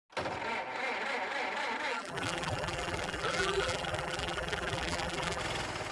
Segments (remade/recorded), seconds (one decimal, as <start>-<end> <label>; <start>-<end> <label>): 0.0-1.9 recorded; 1.9-5.4 remade; 5.4-5.9 recorded